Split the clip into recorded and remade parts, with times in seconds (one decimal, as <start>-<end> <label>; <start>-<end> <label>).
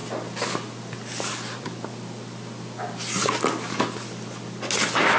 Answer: 0.0-5.2 recorded